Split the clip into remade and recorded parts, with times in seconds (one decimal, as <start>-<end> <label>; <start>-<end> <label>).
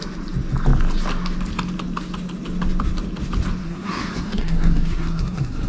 0.0-3.6 recorded; 3.6-5.7 remade